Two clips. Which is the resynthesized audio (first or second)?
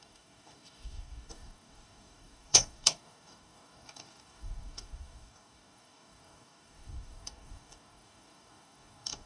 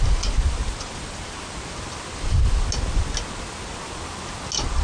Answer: first